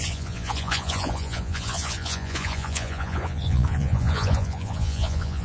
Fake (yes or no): yes